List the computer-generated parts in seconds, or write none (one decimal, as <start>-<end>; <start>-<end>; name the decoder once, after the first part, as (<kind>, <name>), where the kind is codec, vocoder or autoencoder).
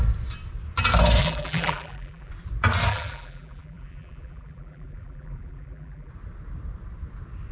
1.2-2.3 (vocoder, BigVGAN v2); 2.9-6.1